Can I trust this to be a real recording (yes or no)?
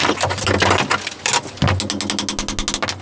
yes